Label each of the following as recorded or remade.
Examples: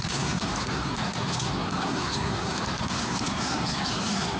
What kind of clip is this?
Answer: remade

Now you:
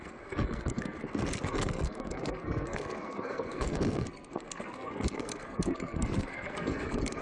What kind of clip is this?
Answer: remade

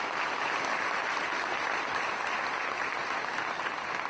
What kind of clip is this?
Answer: recorded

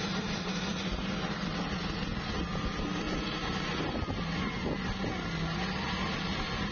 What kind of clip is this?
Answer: recorded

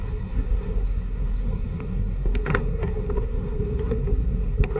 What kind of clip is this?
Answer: remade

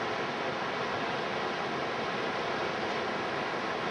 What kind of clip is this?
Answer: recorded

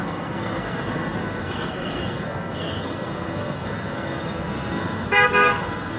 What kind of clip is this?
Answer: remade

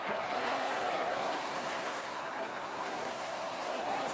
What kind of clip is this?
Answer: remade